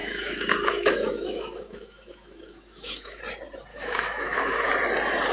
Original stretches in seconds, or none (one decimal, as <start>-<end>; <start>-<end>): 3.2-3.7; 4.7-5.3